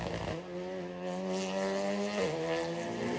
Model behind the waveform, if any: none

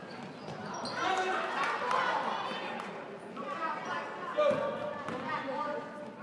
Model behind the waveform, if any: none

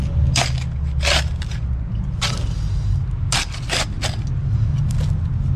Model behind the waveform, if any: none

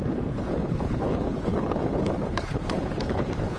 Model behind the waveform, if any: codec, HILCodec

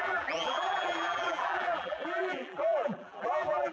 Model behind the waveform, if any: vocoder, BigVGAN v2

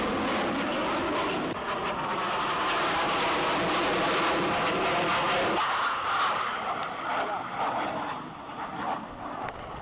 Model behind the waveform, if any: none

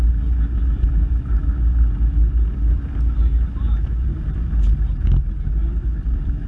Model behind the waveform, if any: none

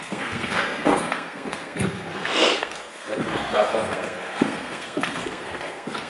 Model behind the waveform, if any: codec, SNAC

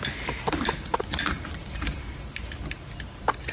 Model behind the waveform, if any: vocoder, BigVGAN v2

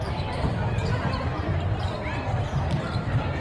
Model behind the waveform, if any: vocoder, BigVGAN v2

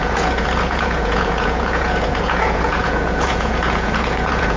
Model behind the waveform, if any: vocoder, Vocos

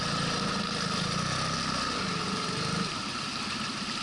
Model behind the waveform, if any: none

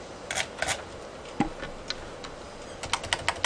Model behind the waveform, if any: none